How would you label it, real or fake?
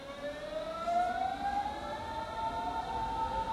real